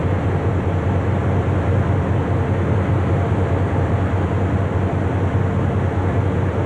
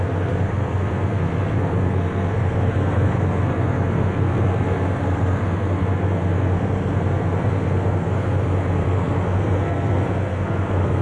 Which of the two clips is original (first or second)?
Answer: first